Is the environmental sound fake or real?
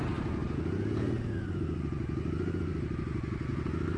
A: real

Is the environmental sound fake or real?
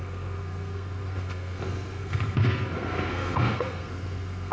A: fake